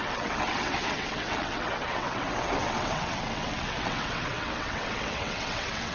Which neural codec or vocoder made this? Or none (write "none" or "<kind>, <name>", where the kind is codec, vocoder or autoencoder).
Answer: vocoder, WaveNeXt